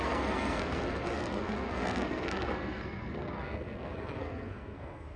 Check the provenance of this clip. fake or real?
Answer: fake